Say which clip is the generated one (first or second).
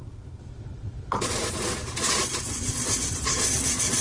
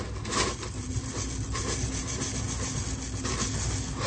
first